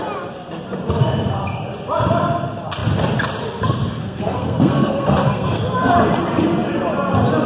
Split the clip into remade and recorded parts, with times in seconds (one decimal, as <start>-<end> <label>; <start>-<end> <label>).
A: 0.0-4.0 recorded; 4.0-5.6 remade; 5.6-7.5 recorded